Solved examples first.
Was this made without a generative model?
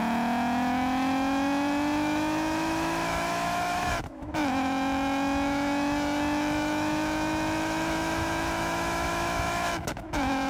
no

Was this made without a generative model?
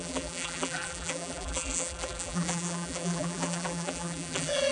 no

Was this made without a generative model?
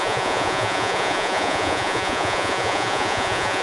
no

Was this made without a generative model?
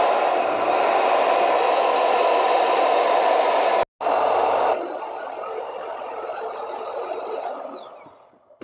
yes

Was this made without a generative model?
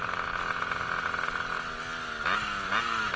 yes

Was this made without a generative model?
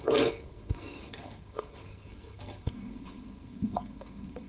no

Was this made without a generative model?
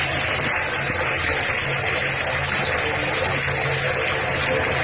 yes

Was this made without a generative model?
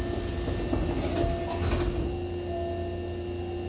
yes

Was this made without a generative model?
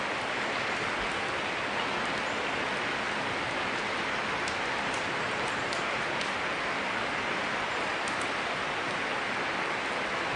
yes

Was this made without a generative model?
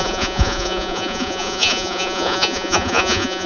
no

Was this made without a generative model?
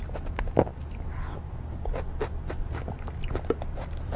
yes